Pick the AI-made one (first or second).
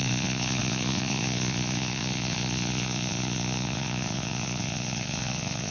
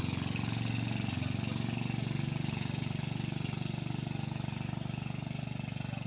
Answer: first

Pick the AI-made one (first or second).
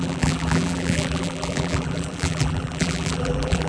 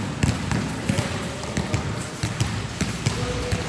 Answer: first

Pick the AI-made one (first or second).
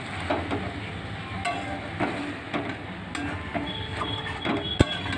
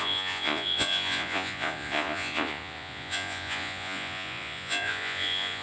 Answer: second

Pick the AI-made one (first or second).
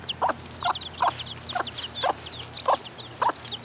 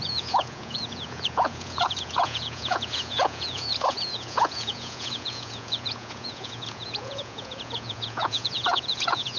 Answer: second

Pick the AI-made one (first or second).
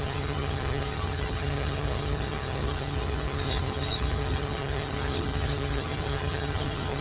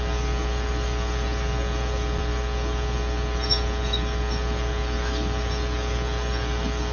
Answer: first